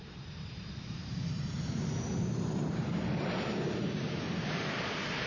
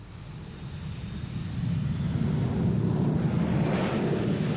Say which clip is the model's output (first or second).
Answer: first